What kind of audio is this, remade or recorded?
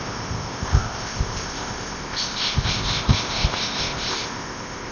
remade